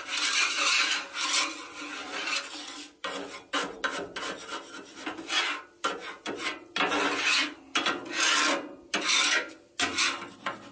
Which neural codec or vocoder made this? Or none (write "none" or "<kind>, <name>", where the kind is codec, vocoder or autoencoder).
none